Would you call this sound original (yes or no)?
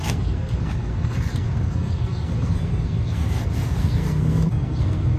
no